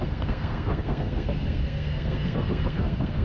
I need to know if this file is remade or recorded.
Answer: remade